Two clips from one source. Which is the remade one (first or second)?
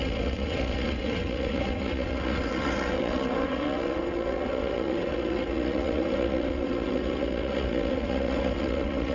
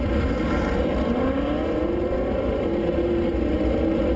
first